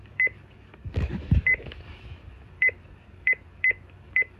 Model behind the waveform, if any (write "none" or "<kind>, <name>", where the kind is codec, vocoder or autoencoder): codec, DAC